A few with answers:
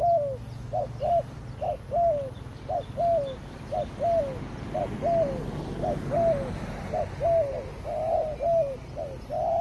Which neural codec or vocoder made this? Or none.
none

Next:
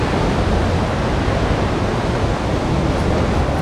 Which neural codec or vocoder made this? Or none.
none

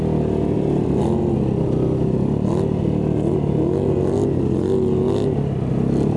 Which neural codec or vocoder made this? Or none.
none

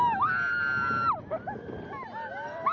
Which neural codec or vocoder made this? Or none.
none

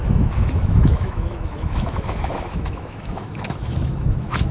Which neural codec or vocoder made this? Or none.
autoencoder, DAC-VAE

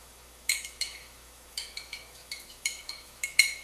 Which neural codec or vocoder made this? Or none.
autoencoder, DAC-VAE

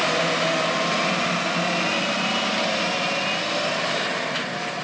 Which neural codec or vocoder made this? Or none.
none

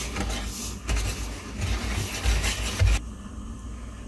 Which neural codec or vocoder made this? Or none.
none